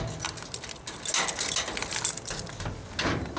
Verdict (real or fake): real